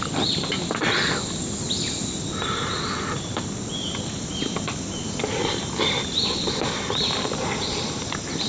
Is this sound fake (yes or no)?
no